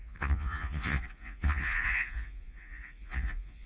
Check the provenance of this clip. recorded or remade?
remade